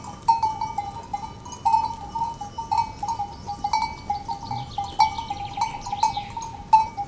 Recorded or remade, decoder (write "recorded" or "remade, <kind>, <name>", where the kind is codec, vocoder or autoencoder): recorded